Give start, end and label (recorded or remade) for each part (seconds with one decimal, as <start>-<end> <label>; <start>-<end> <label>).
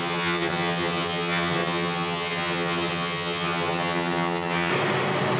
0.0-4.7 remade; 4.7-5.4 recorded